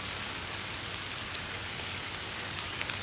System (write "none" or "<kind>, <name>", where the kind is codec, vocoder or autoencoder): codec, DAC